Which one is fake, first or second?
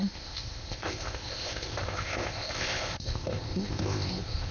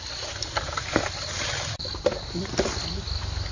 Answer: first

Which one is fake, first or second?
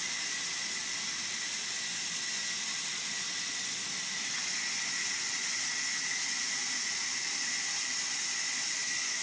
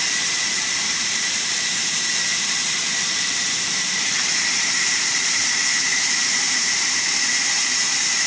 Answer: second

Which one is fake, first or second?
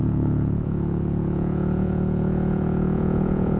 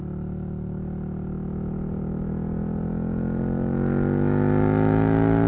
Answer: first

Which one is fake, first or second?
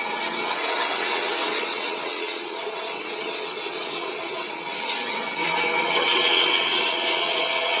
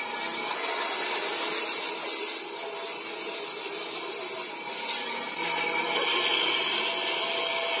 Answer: first